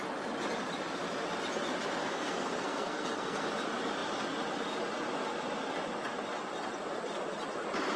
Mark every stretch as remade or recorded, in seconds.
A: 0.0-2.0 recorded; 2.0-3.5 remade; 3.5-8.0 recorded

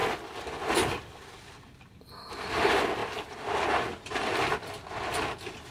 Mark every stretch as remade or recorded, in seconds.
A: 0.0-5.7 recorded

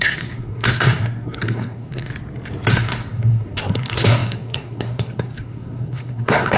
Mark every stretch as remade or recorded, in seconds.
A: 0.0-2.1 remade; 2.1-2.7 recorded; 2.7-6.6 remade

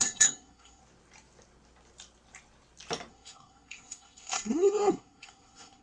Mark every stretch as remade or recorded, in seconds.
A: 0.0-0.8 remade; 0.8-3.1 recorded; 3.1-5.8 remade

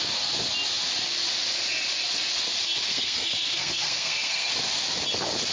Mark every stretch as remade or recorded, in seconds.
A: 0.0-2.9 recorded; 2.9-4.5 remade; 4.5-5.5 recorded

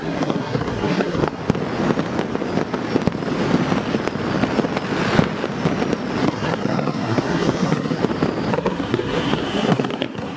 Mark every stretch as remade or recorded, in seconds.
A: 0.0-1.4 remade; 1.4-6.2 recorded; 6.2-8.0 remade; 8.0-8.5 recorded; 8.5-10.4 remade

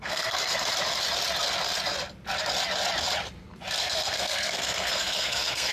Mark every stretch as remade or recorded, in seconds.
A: 0.0-0.4 remade; 0.4-3.8 recorded; 3.8-5.7 remade

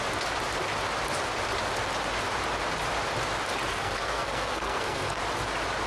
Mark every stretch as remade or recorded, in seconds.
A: 0.0-3.7 recorded; 3.7-5.2 remade; 5.2-5.9 recorded